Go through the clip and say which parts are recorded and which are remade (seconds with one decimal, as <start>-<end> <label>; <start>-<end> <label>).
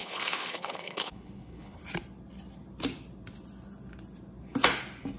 0.0-1.8 remade; 1.8-5.2 recorded